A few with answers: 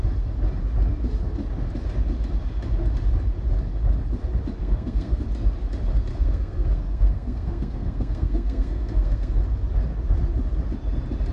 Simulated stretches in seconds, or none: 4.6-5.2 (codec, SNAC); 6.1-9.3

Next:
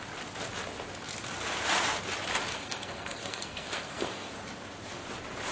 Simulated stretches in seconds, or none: 2.5-4.3 (codec, SNAC)

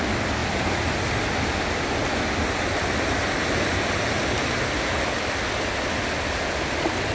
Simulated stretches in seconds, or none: none

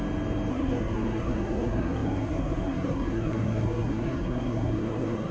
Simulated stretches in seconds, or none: 0.5-5.3 (codec, SNAC)

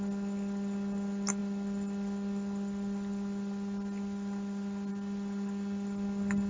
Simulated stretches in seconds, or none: none

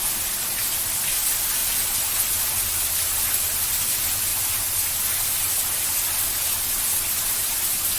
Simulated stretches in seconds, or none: none